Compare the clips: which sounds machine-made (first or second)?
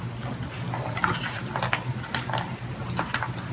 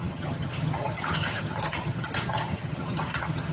second